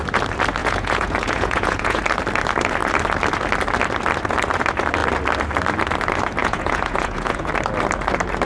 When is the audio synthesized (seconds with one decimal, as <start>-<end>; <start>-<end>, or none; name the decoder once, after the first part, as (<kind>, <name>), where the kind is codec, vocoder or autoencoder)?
0.6-2.0 (vocoder, Vocos); 6.4-7.5